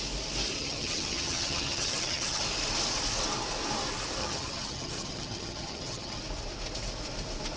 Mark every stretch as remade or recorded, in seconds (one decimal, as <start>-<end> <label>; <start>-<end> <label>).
0.0-0.6 recorded; 0.6-2.4 remade; 2.4-4.2 recorded; 4.2-6.2 remade; 6.2-7.6 recorded